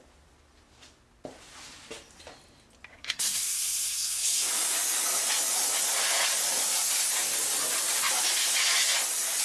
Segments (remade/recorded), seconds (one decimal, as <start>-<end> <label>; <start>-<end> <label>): 0.0-2.9 recorded; 2.9-4.5 remade; 4.5-9.4 recorded